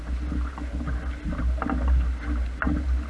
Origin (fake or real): real